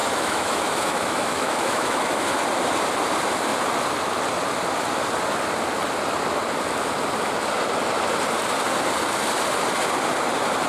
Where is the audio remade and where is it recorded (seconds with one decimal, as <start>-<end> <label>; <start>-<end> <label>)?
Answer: 0.0-2.1 remade; 2.1-10.7 recorded